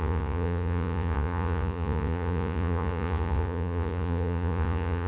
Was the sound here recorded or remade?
remade